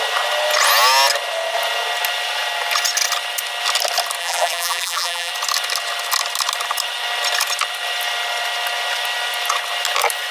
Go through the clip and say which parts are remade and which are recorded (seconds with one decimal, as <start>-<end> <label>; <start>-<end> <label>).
0.0-4.2 recorded; 4.2-5.3 remade; 5.3-10.3 recorded